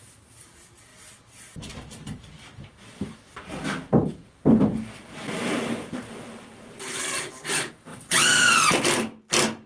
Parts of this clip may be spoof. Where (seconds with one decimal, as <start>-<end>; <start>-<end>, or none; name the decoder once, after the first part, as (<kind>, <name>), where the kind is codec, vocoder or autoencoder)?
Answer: 7.9-8.6 (vocoder, WaveNeXt)